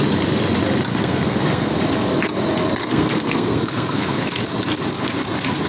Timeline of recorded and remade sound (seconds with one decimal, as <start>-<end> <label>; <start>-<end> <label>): 0.0-0.9 recorded; 0.9-1.8 remade; 1.8-2.8 recorded; 2.8-4.2 remade; 4.2-5.7 recorded